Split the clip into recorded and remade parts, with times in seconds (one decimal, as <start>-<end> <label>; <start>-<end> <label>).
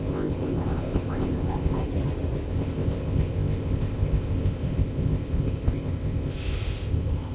0.0-1.8 remade; 1.8-2.5 recorded; 2.5-7.3 remade